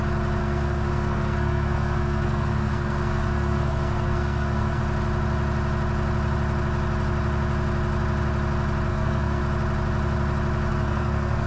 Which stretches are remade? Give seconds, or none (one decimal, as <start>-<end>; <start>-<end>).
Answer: 0.4-4.8; 8.9-9.4; 10.7-11.5